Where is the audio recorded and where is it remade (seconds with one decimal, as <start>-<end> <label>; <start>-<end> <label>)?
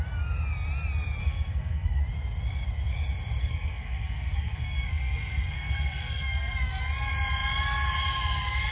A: 0.0-1.2 recorded; 1.2-2.0 remade; 2.0-3.4 recorded; 3.4-6.8 remade; 6.8-8.7 recorded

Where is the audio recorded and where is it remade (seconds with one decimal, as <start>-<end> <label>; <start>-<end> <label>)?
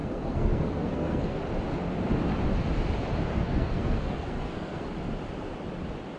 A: 0.0-1.4 remade; 1.4-3.3 recorded; 3.3-4.9 remade; 4.9-6.2 recorded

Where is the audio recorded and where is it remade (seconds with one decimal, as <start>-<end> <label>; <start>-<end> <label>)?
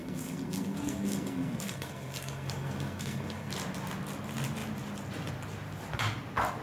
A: 0.0-3.5 remade; 3.5-6.6 recorded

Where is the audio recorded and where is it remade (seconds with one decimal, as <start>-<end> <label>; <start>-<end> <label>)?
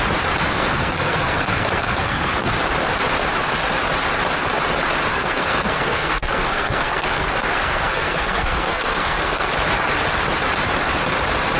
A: 0.0-0.5 recorded; 0.5-2.5 remade; 2.5-5.1 recorded; 5.1-9.5 remade; 9.5-11.6 recorded